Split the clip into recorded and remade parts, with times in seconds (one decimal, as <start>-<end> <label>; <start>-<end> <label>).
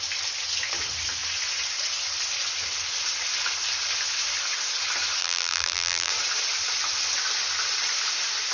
0.0-5.2 recorded; 5.2-6.1 remade; 6.1-8.5 recorded